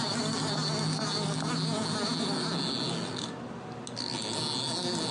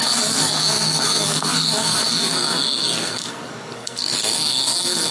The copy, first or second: second